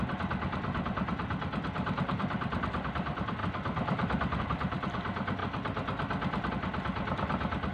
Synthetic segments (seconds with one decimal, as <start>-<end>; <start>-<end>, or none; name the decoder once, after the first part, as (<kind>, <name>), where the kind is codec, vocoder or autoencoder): none